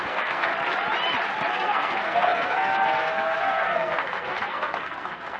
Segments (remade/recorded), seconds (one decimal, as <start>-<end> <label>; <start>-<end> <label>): 0.0-0.5 remade; 0.5-1.5 recorded; 1.5-5.4 remade